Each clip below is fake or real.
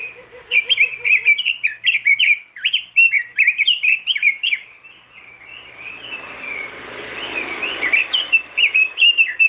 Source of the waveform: fake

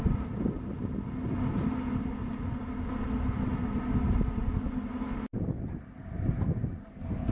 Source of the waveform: real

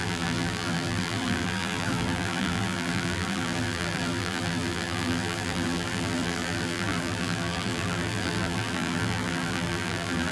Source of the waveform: fake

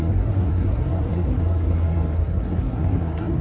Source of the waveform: fake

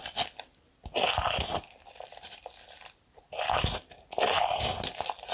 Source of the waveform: real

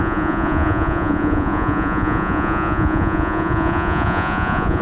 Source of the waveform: fake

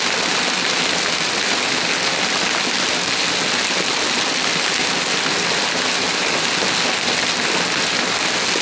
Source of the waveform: real